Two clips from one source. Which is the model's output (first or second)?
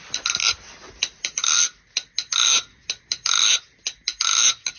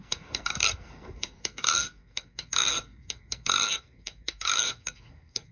second